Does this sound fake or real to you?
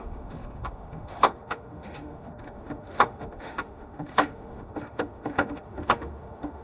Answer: fake